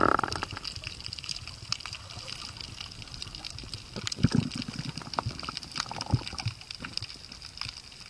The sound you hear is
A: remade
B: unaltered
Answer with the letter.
B